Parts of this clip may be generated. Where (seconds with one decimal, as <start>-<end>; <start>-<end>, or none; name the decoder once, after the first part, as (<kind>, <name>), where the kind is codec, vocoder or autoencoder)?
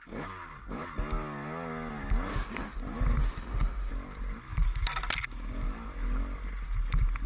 2.3-2.8 (autoencoder, DAC-VAE); 3.2-3.9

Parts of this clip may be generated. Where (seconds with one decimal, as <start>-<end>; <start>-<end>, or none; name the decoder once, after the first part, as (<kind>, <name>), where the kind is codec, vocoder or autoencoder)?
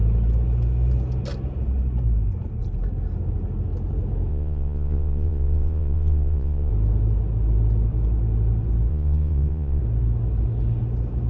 4.3-6.7 (vocoder, Vocos); 8.9-9.8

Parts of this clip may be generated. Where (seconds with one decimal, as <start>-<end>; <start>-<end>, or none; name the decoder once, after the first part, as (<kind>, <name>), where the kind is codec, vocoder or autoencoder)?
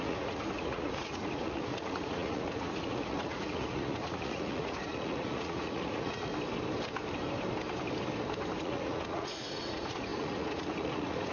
0.0-6.3 (vocoder, Vocos); 8.6-11.3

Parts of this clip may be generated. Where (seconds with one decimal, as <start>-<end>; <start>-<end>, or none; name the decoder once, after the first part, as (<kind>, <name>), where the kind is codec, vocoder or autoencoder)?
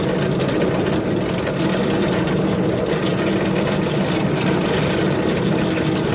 none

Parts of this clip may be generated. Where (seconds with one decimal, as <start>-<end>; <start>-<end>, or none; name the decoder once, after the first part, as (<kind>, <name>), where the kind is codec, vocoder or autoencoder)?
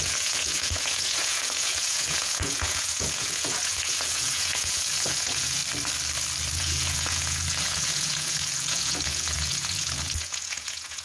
0.0-5.6 (vocoder, Vocos); 6.5-11.0